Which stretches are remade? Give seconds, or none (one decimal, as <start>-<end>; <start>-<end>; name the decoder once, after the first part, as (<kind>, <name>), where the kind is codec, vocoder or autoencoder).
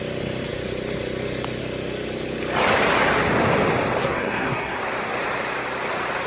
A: 4.0-4.8 (codec, SNAC)